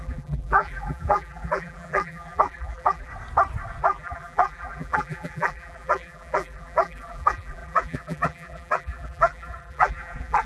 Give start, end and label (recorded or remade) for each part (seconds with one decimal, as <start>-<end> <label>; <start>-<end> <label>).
0.0-3.1 remade; 3.1-3.8 recorded; 3.8-10.5 remade